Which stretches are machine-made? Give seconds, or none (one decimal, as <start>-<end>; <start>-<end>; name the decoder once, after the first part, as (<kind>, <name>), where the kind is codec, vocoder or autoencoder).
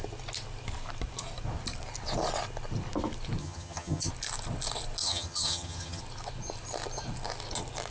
3.4-4.1 (vocoder, HiFi-GAN); 5.0-6.0